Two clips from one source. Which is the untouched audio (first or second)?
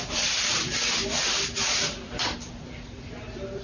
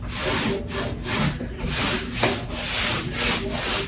second